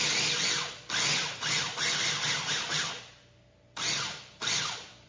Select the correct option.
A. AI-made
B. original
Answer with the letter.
B